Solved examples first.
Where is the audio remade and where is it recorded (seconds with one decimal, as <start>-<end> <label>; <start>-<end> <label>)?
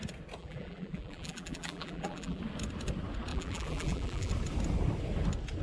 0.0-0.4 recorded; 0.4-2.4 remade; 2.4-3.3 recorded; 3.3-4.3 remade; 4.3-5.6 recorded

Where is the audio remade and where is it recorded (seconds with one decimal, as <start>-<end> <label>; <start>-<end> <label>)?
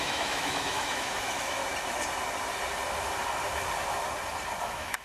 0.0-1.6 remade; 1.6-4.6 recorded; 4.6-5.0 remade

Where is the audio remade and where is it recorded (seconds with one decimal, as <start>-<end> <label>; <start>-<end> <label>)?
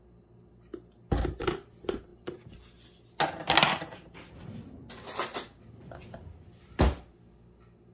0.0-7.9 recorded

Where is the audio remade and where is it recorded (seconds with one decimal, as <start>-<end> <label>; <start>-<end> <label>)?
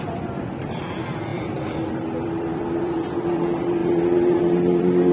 0.0-5.1 remade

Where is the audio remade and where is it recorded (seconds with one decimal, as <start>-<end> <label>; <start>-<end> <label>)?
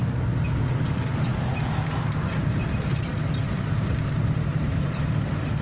0.0-5.6 recorded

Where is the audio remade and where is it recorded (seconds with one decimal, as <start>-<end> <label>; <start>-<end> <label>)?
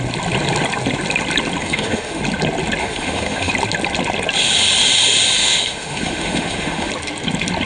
0.0-1.6 recorded; 1.6-2.2 remade; 2.2-2.8 recorded; 2.8-3.5 remade; 3.5-5.4 recorded; 5.4-6.9 remade; 6.9-7.7 recorded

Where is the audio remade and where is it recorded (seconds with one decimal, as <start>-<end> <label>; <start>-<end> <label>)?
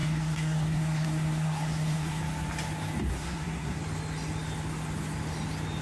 0.0-2.2 remade; 2.2-3.1 recorded; 3.1-3.8 remade; 3.8-5.8 recorded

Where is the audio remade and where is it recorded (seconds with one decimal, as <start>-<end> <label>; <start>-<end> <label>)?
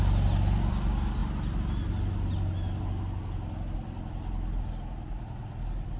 0.0-6.0 recorded